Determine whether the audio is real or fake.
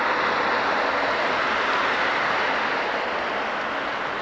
real